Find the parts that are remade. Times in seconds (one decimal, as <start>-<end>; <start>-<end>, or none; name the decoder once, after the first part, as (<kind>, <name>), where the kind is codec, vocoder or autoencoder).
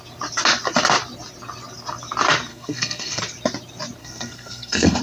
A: 2.5-3.2 (codec, SNAC); 4.0-5.0